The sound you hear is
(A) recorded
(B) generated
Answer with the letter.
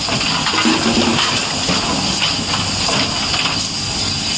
A